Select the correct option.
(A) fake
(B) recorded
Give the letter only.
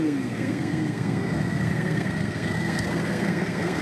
A